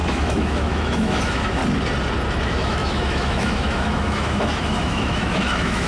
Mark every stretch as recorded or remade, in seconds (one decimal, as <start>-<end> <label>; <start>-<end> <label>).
0.0-1.6 remade; 1.6-2.4 recorded; 2.4-5.9 remade